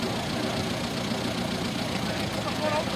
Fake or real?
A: real